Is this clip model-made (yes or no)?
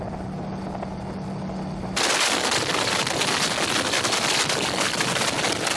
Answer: no